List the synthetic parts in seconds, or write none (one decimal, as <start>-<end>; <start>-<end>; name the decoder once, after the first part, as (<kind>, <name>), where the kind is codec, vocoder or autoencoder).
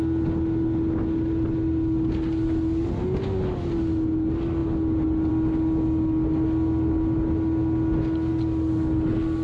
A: none